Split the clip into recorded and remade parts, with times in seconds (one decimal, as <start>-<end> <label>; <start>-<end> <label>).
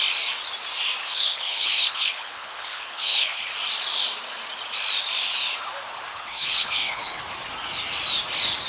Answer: 0.0-1.0 recorded; 1.0-3.5 remade; 3.5-6.1 recorded; 6.1-7.2 remade; 7.2-8.7 recorded